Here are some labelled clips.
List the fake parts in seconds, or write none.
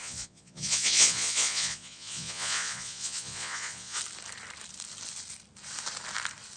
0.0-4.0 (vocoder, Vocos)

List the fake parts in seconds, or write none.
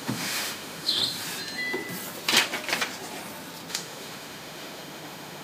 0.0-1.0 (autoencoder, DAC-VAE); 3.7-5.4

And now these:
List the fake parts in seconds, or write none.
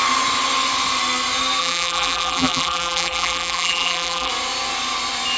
1.6-4.3 (vocoder, BigVGAN v2)